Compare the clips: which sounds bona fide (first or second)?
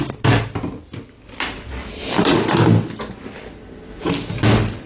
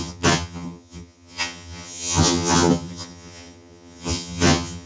first